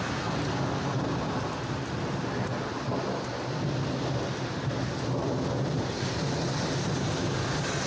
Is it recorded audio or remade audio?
recorded